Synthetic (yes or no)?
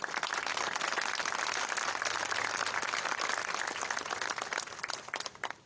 no